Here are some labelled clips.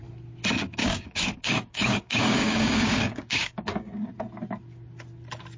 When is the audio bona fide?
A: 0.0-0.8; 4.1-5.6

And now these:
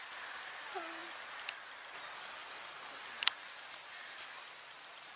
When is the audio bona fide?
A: 0.0-5.2

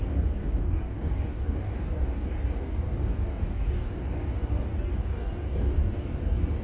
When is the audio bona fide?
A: none

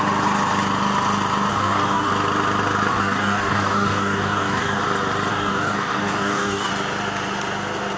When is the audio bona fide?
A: 0.0-1.5; 2.1-2.9; 4.8-5.3; 6.7-8.0

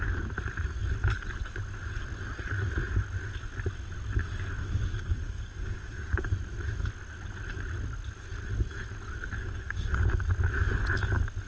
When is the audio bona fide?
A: 0.0-4.6; 6.3-9.4; 9.9-11.5

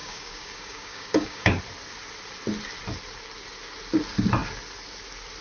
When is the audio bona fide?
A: 1.6-5.4

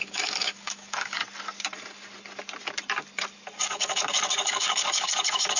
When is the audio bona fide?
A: 1.2-3.6